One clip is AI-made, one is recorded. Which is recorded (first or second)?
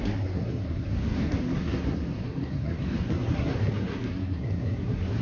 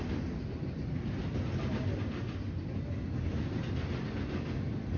second